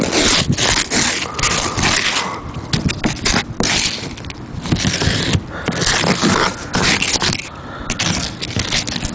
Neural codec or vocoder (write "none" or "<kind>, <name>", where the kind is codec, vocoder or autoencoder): none